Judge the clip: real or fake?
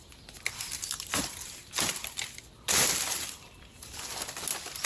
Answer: real